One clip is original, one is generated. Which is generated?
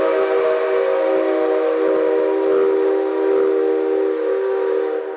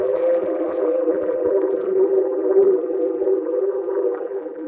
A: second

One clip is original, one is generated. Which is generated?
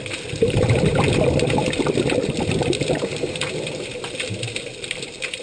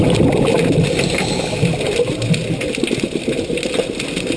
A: first